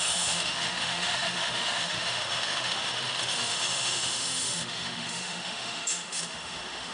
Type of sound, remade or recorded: remade